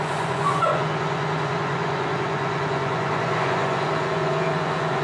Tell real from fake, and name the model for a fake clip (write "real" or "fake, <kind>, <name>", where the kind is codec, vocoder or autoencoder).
fake, vocoder, Vocos